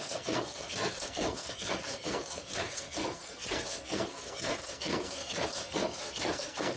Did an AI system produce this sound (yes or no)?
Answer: yes